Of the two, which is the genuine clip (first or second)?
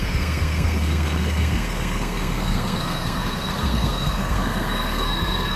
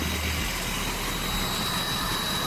second